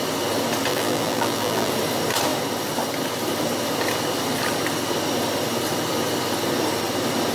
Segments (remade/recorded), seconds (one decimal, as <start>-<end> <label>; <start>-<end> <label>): 0.0-0.7 recorded; 0.7-1.7 remade; 1.7-7.3 recorded